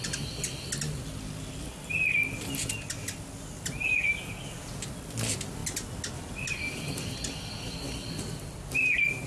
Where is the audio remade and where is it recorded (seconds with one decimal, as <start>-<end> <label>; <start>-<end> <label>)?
0.0-9.3 recorded